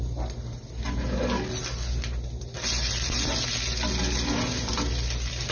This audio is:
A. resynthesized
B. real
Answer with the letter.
B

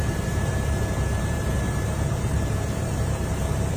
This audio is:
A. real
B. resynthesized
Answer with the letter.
B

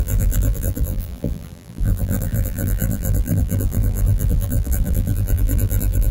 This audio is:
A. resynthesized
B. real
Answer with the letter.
A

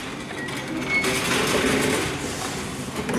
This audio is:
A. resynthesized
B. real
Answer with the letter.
B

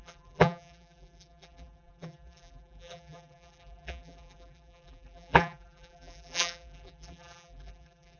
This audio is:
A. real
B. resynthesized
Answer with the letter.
B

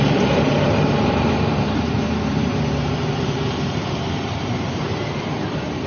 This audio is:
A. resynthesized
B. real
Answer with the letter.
A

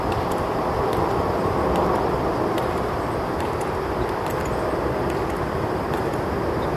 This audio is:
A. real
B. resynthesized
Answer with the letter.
A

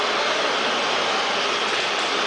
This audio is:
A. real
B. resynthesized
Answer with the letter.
A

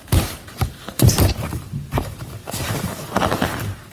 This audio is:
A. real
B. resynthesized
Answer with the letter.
B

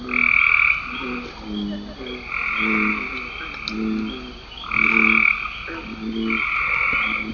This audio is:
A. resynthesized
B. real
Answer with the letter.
B